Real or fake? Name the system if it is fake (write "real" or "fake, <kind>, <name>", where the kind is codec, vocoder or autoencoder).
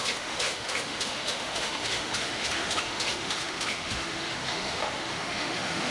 fake, autoencoder, DAC-VAE